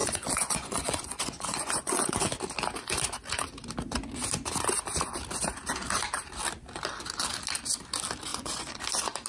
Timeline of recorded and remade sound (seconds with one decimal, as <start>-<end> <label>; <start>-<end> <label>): 0.0-2.3 remade; 2.3-8.3 recorded; 8.3-8.8 remade; 8.8-9.3 recorded